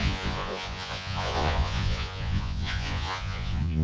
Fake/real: fake